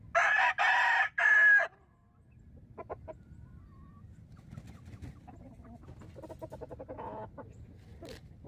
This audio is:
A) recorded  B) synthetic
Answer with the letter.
A